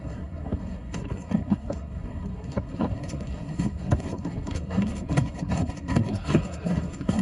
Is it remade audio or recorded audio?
remade